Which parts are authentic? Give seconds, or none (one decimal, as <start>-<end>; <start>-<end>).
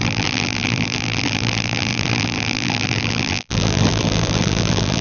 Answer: none